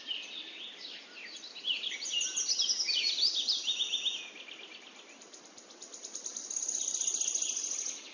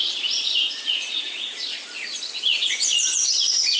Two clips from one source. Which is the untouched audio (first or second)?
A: first